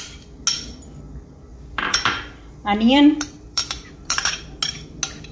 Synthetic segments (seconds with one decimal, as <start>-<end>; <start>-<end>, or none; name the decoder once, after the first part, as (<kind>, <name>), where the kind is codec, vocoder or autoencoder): 1.5-4.4 (vocoder, BigVGAN v2)